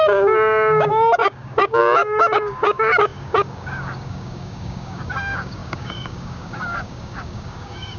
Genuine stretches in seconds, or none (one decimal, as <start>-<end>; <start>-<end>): none

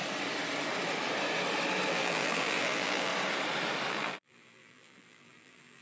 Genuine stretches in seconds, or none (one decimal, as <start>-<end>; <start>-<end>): 0.0-1.9; 3.1-3.9

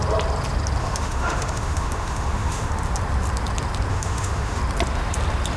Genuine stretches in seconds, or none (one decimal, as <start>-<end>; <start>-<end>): 0.0-0.8; 2.7-3.9; 4.6-5.6

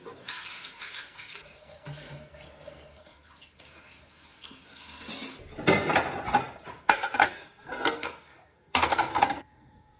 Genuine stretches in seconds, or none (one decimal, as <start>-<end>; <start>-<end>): 5.1-6.8